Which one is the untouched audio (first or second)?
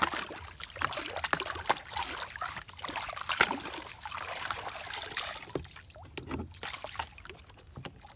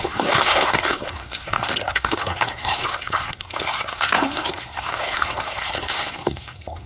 first